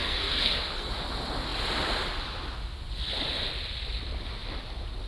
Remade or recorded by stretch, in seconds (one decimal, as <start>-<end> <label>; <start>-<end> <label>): 0.0-0.9 remade; 0.9-5.1 recorded